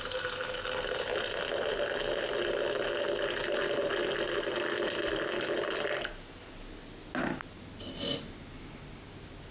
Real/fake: real